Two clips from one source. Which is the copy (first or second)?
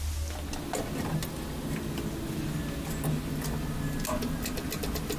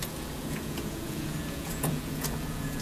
second